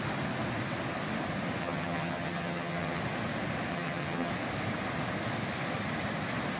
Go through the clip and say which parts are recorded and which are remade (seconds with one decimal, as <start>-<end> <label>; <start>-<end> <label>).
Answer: 0.0-1.6 recorded; 1.6-3.0 remade; 3.0-3.7 recorded; 3.7-4.3 remade; 4.3-6.6 recorded